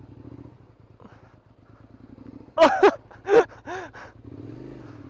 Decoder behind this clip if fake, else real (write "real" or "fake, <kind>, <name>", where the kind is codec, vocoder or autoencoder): real